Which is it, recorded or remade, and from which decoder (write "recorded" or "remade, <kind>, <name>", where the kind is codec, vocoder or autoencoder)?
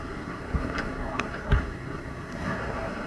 remade, codec, SNAC